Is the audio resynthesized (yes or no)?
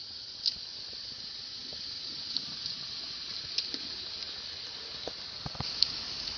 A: no